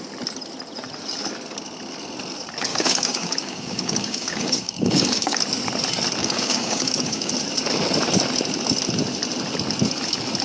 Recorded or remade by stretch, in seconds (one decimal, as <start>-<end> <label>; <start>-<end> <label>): 0.0-2.7 recorded; 2.7-5.4 remade; 5.4-6.2 recorded; 6.2-7.3 remade; 7.3-10.4 recorded